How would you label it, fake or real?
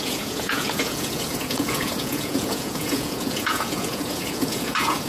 fake